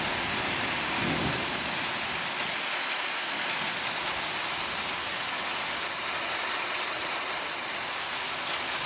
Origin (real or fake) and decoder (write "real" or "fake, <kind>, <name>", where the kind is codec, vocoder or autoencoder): real